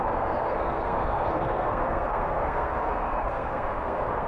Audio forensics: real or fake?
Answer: fake